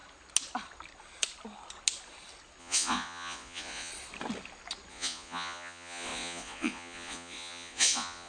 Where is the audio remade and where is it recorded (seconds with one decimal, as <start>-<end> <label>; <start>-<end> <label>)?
0.0-2.6 recorded; 2.6-3.9 remade; 3.9-4.9 recorded; 4.9-8.3 remade